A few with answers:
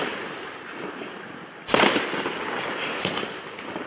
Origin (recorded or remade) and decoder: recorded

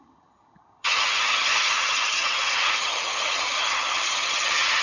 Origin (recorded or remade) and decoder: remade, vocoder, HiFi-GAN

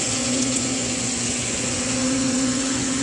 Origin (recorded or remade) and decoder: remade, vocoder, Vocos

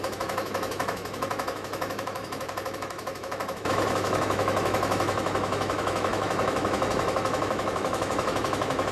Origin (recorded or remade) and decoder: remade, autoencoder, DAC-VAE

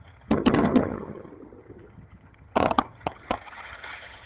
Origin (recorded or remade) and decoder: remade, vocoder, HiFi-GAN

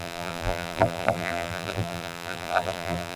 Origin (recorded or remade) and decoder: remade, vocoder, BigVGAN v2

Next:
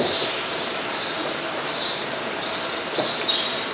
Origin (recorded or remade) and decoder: remade, vocoder, BigVGAN v2